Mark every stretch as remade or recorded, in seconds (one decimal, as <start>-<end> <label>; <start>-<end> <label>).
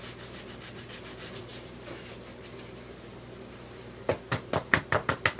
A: 0.0-5.4 recorded